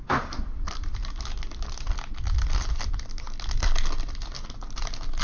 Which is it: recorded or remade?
recorded